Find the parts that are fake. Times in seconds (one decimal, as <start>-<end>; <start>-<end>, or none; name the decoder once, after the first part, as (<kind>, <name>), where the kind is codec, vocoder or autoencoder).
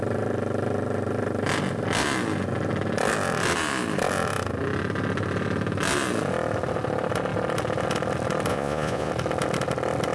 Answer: 8.5-9.1 (vocoder, Vocos)